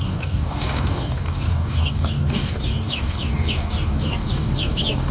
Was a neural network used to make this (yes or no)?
yes